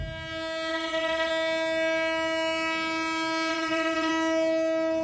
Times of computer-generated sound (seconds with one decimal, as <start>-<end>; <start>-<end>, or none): 0.7-1.3; 3.5-4.1